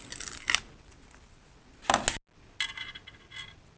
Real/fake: real